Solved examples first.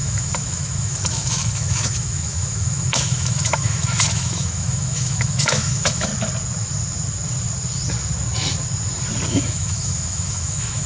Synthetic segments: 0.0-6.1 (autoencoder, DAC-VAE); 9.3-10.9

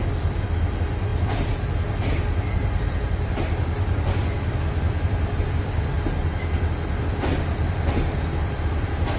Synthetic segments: none

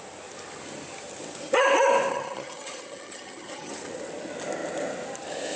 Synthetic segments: 2.1-3.7 (vocoder, HiFi-GAN)

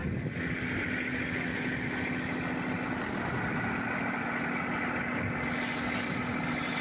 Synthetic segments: none

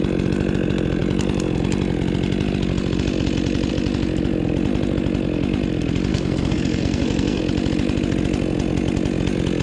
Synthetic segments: 6.1-7.4 (codec, SNAC)

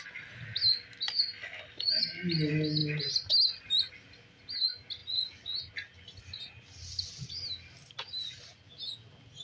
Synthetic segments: none

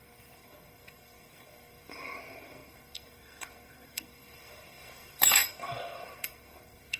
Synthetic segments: 0.0-7.0 (codec, SNAC)